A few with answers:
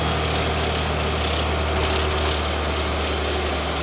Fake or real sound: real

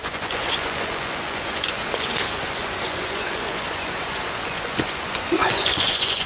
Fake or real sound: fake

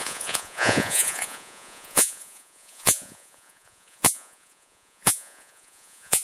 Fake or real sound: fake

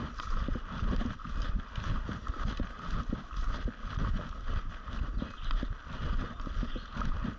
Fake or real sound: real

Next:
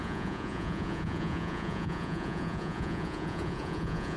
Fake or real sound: fake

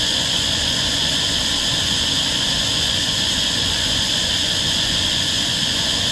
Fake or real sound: fake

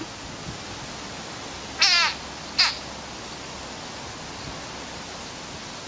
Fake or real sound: real